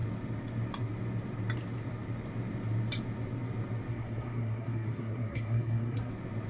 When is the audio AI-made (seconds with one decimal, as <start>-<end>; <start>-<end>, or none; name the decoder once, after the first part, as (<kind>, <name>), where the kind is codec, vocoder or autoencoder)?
3.9-6.1 (codec, SNAC)

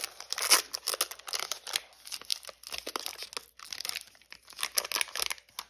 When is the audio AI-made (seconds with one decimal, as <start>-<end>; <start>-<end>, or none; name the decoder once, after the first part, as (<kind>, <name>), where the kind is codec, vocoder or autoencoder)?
none

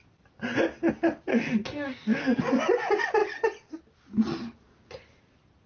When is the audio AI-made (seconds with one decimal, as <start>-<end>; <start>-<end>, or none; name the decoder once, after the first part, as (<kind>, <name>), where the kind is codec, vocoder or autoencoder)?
1.3-2.4 (codec, SNAC)

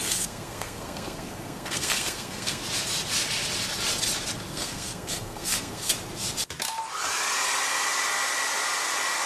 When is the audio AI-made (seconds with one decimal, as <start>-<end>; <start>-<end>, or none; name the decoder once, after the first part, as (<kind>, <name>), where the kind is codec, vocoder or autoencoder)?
0.0-2.6 (codec, SNAC); 4.5-5.9

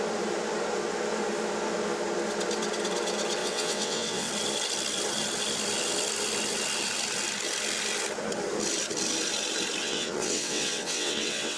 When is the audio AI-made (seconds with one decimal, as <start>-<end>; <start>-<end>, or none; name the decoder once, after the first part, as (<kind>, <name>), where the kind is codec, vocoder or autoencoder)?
3.4-4.3 (vocoder, WaveNeXt); 9.8-11.6

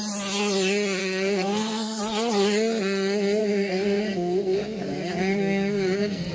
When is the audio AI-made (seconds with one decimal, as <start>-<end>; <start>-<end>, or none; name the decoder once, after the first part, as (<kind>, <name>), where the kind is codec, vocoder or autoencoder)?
1.0-2.0 (codec, SNAC); 3.4-6.3

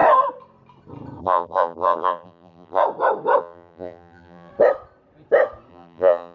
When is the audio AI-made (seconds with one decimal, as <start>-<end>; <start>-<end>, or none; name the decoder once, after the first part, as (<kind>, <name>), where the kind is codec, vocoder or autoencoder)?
1.2-2.8 (vocoder, BigVGAN v2); 3.4-4.5; 5.7-6.3